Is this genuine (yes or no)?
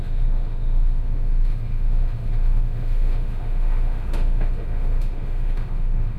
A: no